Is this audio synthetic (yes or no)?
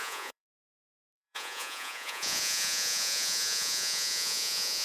yes